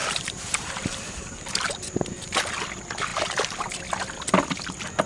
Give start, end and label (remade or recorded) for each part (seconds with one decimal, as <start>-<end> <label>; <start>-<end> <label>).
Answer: 0.0-1.7 remade; 1.7-3.1 recorded; 3.1-3.8 remade; 3.8-5.1 recorded